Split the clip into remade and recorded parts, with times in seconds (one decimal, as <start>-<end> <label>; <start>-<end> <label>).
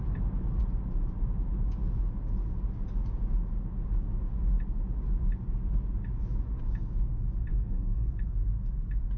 0.0-7.5 recorded; 7.5-8.1 remade; 8.1-9.2 recorded